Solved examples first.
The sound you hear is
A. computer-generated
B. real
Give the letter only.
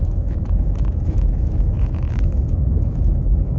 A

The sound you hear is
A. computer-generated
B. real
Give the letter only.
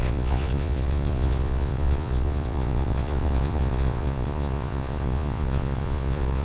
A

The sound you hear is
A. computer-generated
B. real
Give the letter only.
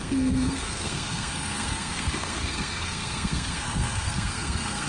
A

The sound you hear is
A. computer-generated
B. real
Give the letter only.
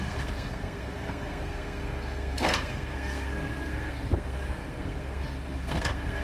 A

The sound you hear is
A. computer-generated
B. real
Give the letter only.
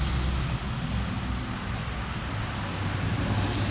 B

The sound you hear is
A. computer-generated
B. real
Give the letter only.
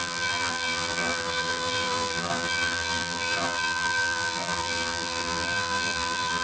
A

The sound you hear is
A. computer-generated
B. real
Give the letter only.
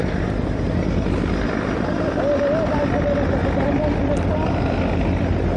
B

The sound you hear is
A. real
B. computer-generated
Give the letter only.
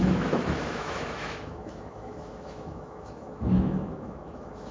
B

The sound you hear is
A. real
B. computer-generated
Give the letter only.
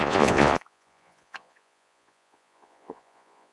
B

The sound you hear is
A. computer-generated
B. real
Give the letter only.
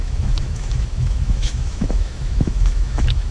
A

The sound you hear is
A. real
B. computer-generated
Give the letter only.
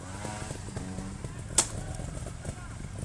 A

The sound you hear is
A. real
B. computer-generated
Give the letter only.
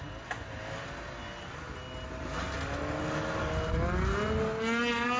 A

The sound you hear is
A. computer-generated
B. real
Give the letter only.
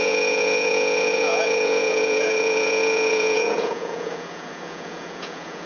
A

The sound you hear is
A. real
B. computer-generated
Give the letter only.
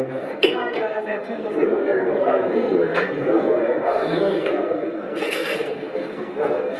B